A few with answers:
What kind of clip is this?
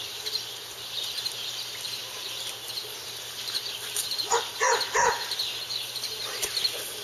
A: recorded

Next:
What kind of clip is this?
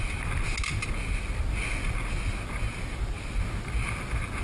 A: recorded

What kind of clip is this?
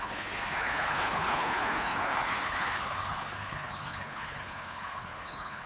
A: remade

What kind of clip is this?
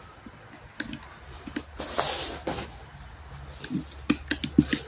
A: recorded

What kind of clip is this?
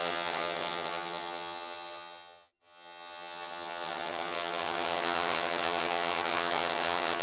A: remade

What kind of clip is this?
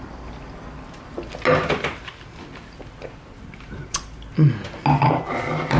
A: recorded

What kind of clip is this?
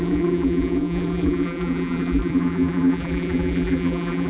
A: remade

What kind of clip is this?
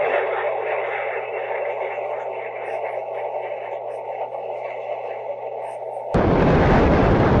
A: remade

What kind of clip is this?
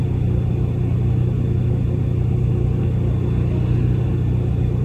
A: recorded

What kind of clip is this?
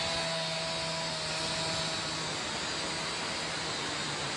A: recorded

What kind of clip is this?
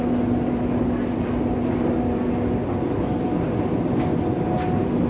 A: recorded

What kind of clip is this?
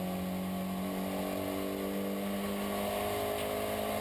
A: recorded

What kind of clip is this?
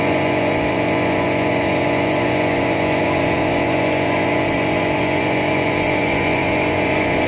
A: remade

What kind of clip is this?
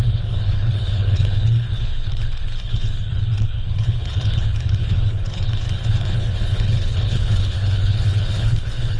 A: remade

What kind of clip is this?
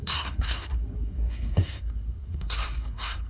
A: remade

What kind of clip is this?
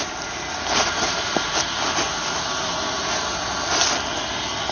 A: recorded